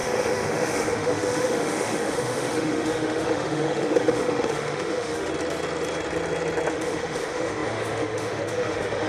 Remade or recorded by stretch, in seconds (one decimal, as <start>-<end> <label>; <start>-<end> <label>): 0.0-5.3 remade; 5.3-6.7 recorded; 6.7-9.1 remade